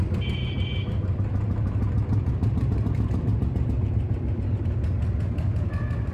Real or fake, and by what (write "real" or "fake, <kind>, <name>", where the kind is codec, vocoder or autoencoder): real